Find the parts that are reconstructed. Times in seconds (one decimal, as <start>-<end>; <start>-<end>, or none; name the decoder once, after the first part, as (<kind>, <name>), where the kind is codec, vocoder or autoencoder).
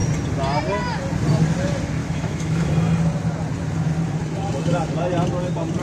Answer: 2.0-2.7 (autoencoder, DAC-VAE)